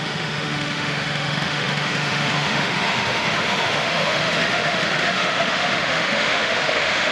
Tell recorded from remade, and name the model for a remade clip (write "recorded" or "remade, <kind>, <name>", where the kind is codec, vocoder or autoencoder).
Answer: remade, autoencoder, DAC-VAE